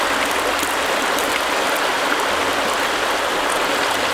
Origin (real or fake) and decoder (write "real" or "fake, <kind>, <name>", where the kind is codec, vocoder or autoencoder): real